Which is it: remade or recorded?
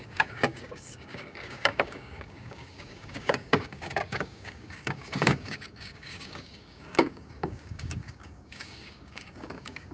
remade